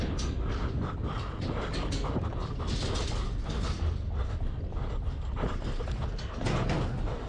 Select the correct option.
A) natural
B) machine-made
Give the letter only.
A